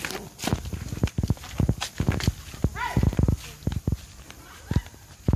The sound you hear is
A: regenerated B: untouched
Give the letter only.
B